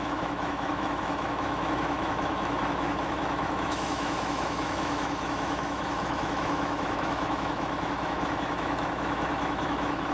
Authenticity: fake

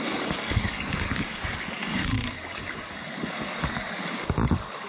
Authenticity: fake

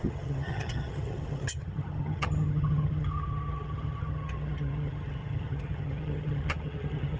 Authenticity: fake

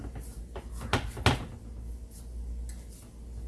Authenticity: real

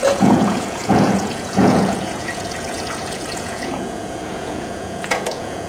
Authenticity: fake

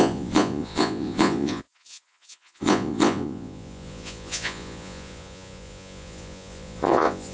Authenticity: fake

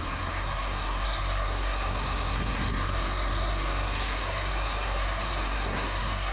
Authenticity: fake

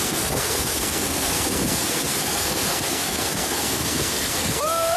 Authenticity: fake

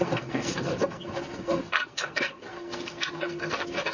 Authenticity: fake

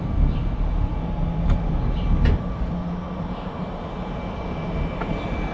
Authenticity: real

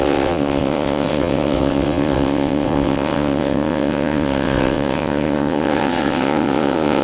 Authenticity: fake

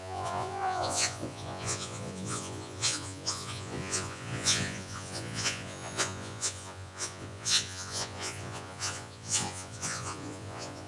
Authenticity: fake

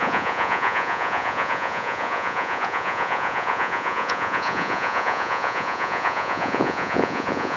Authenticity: fake